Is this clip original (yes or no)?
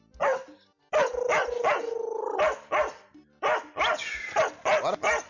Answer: yes